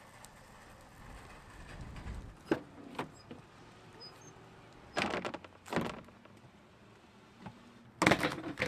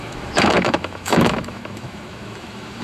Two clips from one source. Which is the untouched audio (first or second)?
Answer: first